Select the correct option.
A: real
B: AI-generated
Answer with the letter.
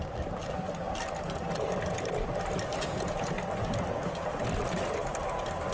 A